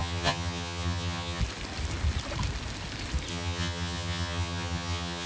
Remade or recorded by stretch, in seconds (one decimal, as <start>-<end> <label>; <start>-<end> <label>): 0.0-1.4 remade; 1.4-3.3 recorded; 3.3-5.3 remade